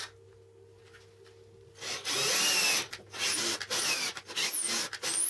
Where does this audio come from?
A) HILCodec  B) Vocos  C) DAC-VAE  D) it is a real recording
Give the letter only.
D